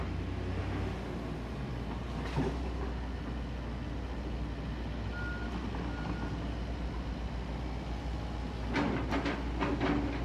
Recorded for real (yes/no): yes